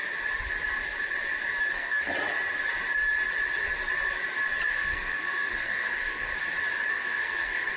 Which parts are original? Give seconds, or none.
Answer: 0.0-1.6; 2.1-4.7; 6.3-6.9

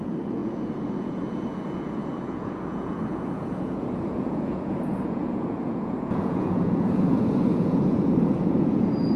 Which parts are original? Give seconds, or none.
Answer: none

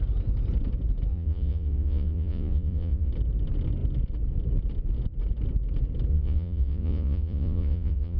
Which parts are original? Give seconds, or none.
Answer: 0.0-1.1; 3.1-6.1

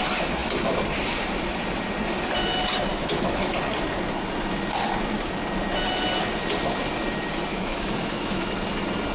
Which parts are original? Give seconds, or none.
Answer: 0.0-2.9; 3.5-7.5; 8.5-9.1

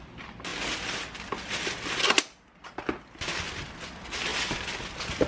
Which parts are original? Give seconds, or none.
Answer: 0.0-5.3

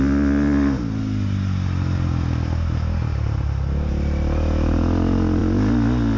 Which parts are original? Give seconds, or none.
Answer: 0.0-6.2

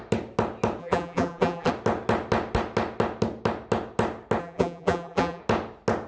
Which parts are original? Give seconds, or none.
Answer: 0.0-0.8; 1.7-4.4; 5.4-6.1